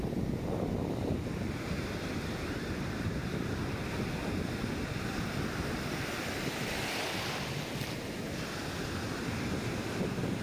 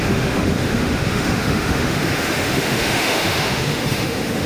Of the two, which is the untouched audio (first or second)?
first